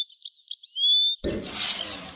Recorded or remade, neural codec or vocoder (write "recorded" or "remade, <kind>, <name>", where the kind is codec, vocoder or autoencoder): recorded